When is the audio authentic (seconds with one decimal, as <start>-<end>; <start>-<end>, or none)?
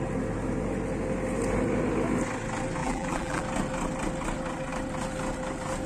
0.0-2.8; 3.4-5.9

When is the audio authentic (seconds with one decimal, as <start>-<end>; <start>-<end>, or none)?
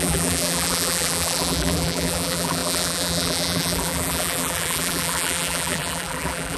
none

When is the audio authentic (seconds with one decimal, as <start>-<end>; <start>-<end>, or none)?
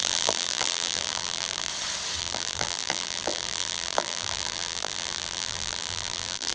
1.7-2.2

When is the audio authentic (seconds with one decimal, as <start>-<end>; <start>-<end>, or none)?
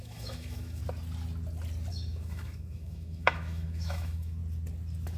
0.8-1.9; 4.4-5.2